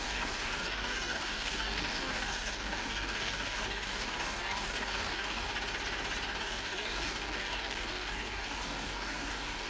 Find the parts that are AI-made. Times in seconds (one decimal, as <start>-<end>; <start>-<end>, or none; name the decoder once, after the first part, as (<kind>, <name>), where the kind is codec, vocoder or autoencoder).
0.0-5.5 (codec, DAC); 6.4-9.7